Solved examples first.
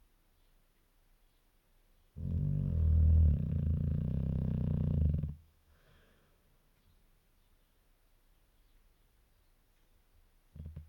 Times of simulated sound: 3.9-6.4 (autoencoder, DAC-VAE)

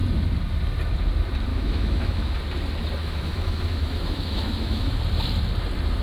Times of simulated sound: 1.5-2.4 (autoencoder, DAC-VAE); 3.0-5.0